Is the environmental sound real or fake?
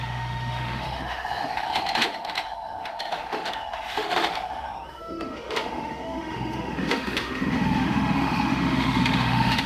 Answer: fake